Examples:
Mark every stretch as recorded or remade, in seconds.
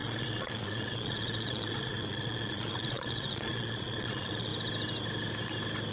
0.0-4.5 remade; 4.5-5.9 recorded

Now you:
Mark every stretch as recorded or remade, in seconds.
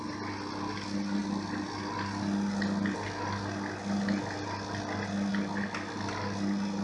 0.0-6.8 recorded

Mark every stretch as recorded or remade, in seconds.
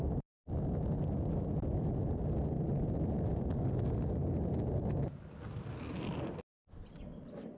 0.0-7.6 recorded